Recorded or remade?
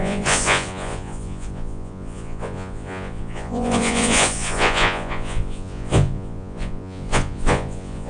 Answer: remade